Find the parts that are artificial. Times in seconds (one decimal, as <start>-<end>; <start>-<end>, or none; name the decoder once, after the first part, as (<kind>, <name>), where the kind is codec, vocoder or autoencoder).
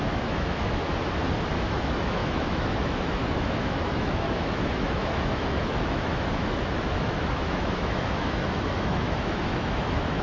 0.0-0.9 (autoencoder, DAC-VAE); 1.5-10.2